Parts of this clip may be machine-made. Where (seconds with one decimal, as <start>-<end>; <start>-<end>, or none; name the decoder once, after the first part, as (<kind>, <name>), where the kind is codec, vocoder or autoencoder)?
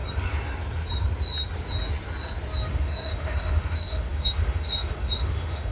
2.7-5.7 (autoencoder, DAC-VAE)